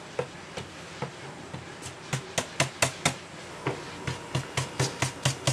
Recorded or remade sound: recorded